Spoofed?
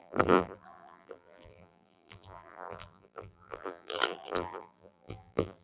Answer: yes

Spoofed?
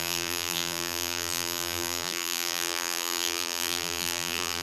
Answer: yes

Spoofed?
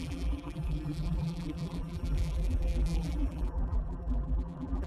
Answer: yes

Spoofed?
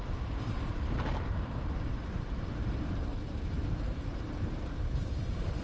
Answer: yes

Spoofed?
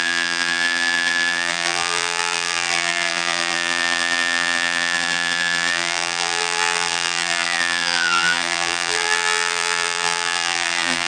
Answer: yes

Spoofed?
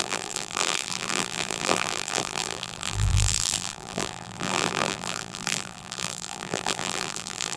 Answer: yes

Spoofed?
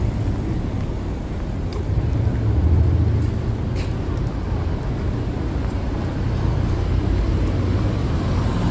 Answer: no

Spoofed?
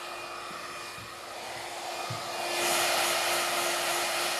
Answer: no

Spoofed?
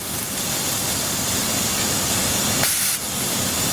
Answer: yes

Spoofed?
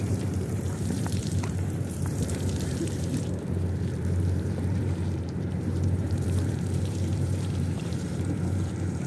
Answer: yes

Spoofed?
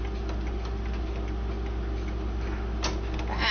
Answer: no